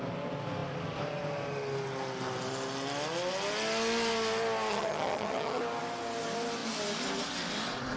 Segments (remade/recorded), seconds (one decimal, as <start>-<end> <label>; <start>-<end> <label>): 0.0-4.7 recorded; 4.7-5.6 remade; 5.6-8.0 recorded